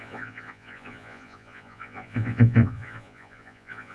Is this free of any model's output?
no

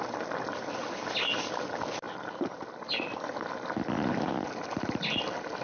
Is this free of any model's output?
yes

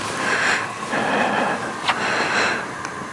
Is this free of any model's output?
yes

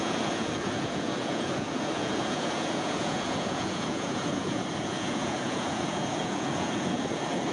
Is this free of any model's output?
no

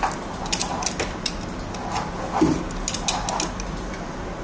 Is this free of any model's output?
yes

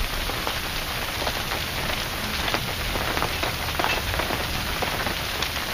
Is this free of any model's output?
yes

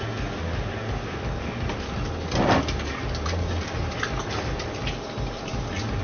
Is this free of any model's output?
yes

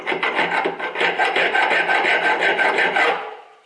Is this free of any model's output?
yes